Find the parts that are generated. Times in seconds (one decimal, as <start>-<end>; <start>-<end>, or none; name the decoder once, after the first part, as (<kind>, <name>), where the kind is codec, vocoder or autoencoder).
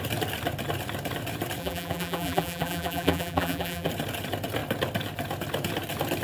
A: 1.6-3.9 (vocoder, BigVGAN v2)